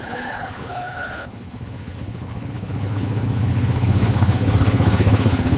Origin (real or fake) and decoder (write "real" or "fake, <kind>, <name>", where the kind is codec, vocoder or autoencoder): fake, codec, HILCodec